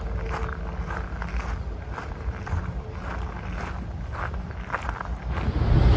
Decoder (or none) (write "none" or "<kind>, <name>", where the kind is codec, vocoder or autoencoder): none